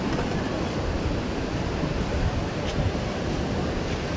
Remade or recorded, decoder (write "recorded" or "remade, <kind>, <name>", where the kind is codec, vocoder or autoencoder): recorded